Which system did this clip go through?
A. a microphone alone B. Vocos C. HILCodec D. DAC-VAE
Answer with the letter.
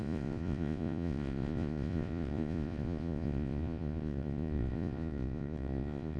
B